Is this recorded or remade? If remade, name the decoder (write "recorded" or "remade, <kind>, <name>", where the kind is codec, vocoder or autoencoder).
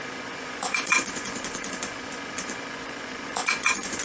remade, vocoder, Vocos